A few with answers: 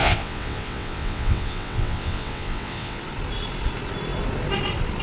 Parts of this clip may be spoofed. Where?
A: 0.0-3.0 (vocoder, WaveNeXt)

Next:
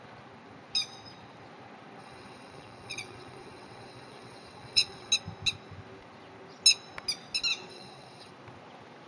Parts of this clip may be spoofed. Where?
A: 2.0-5.1 (vocoder, WaveNeXt); 7.7-8.3

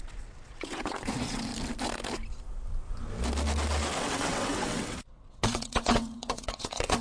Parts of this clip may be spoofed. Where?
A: 0.0-1.5 (vocoder, WaveNeXt); 4.0-7.0

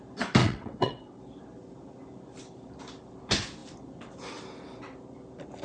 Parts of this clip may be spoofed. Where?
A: 0.4-1.2 (vocoder, WaveNeXt)

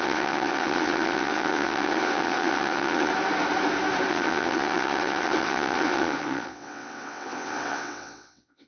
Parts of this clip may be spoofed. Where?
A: 0.0-3.1 (vocoder, WaveNeXt); 4.1-8.7

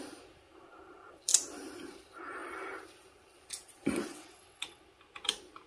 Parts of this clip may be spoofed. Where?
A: 4.1-4.8 (vocoder, WaveNeXt)